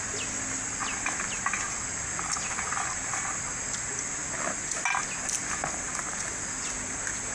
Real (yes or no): yes